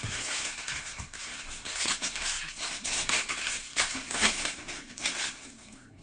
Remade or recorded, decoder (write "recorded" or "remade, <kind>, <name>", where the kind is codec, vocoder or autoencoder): remade, codec, SNAC